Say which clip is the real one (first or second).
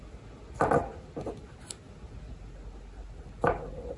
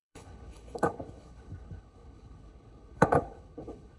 first